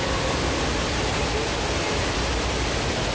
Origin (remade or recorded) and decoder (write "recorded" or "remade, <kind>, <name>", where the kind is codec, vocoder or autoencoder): recorded